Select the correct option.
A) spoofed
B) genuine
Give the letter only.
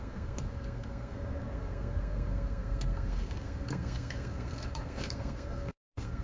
A